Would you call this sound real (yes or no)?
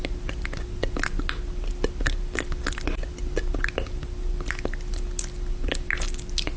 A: yes